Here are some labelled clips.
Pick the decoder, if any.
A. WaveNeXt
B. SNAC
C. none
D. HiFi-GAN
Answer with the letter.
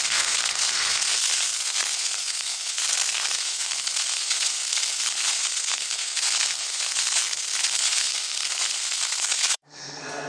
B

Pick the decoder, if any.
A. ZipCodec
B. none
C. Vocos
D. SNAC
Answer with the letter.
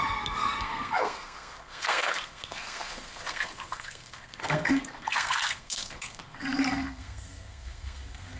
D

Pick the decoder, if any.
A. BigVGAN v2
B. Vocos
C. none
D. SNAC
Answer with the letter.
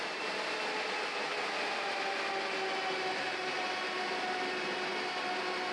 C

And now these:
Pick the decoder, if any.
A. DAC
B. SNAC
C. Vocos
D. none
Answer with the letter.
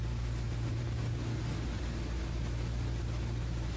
D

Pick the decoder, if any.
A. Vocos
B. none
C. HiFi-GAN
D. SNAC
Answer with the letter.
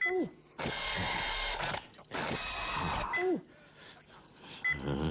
B